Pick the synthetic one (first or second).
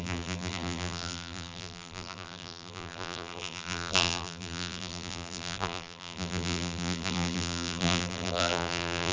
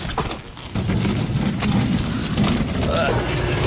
first